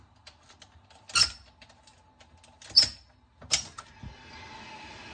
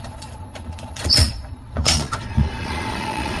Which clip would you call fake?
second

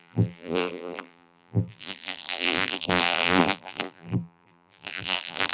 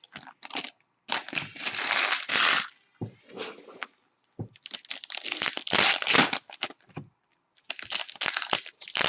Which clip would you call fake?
first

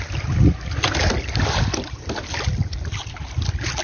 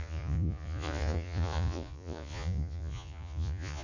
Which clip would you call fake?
second